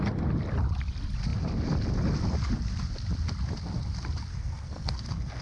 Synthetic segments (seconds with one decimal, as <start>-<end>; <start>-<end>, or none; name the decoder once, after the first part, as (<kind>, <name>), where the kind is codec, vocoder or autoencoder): 4.3-5.4 (codec, SNAC)